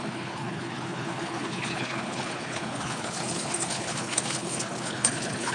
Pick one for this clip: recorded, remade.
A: remade